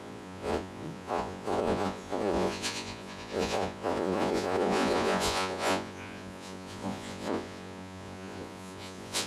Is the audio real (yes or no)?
no